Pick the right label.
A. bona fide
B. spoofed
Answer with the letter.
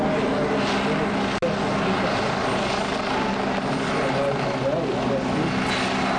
A